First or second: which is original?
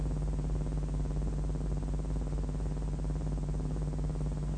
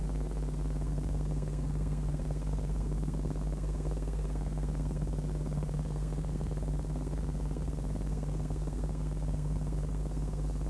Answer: first